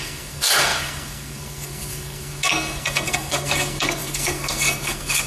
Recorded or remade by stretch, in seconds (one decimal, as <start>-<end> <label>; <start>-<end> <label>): 0.0-5.3 remade